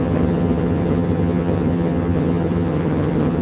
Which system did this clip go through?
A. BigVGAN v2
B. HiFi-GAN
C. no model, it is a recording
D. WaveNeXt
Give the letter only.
B